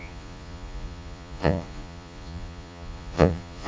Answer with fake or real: fake